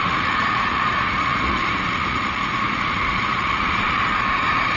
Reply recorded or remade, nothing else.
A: remade